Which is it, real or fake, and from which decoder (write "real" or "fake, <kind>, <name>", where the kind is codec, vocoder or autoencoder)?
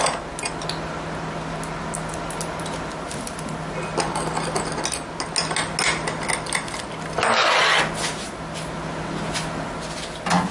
real